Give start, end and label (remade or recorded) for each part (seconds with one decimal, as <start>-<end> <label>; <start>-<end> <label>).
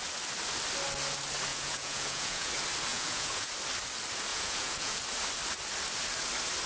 0.0-1.5 recorded; 1.5-2.5 remade; 2.5-2.9 recorded; 2.9-3.5 remade; 3.5-4.3 recorded; 4.3-5.0 remade; 5.0-6.7 recorded